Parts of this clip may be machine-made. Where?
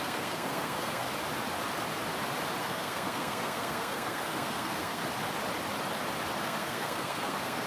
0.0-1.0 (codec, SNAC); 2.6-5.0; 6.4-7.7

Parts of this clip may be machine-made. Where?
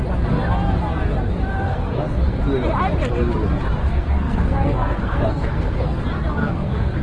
1.7-2.4 (codec, SNAC); 3.8-6.0; 6.4-7.0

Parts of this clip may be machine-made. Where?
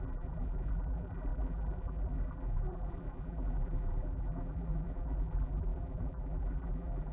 0.0-7.1 (vocoder, BigVGAN v2)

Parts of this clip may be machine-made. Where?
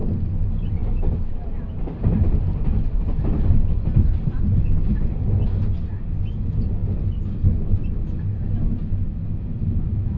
none